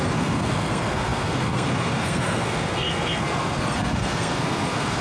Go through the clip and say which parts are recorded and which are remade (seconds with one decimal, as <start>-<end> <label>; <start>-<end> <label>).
0.0-5.0 remade